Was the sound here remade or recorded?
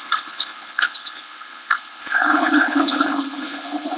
remade